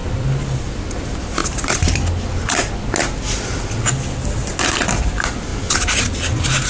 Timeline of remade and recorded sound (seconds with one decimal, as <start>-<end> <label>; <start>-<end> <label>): 0.0-6.7 recorded